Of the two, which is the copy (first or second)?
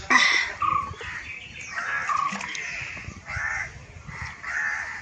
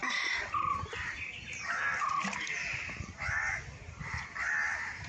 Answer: second